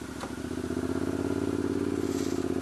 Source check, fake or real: real